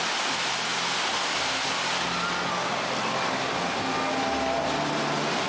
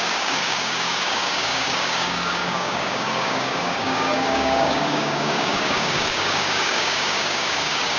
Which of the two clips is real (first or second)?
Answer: first